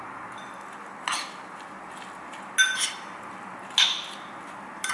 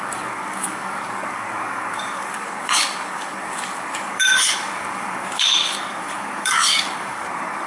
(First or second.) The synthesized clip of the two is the second